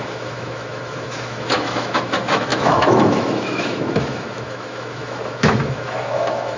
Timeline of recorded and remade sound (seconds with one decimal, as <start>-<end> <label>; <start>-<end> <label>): 0.0-6.6 remade